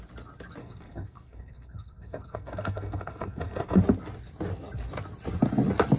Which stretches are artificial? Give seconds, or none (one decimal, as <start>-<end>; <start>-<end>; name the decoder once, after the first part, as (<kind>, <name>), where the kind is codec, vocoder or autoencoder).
0.6-3.8 (codec, SNAC)